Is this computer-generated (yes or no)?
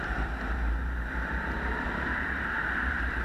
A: yes